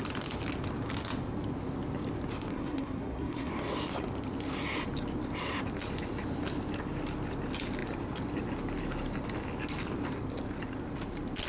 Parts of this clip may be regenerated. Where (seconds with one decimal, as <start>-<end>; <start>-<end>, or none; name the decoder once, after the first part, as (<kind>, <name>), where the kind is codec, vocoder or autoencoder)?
2.5-3.5 (codec, SNAC)